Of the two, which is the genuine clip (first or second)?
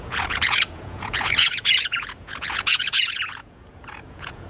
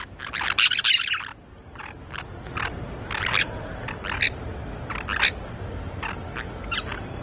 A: second